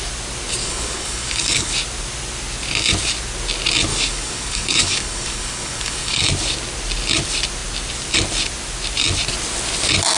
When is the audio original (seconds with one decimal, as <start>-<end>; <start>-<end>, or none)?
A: 0.0-0.6; 1.7-3.9; 6.2-10.2